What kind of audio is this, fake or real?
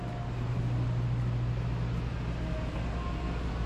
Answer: real